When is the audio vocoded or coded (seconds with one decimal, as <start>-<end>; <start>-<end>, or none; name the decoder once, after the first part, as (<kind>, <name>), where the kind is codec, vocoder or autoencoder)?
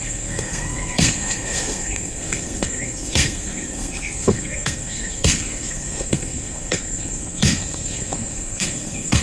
0.0-9.2 (codec, SNAC)